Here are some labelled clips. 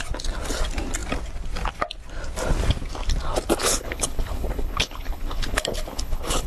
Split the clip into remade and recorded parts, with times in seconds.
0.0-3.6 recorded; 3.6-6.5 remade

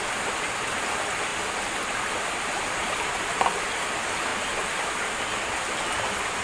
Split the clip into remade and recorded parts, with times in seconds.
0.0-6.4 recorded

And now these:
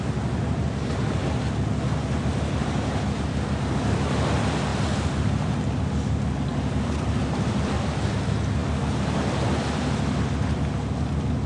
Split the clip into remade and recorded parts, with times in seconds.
0.0-11.5 recorded

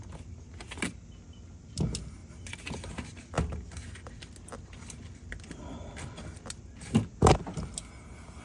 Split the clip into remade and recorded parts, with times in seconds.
0.0-8.4 recorded